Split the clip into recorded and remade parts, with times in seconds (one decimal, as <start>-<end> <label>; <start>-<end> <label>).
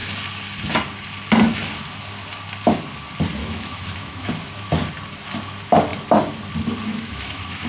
0.0-3.4 recorded; 3.4-4.3 remade; 4.3-6.9 recorded; 6.9-7.7 remade